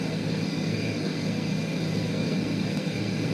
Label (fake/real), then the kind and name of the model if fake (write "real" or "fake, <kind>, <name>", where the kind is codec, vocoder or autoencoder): fake, codec, SNAC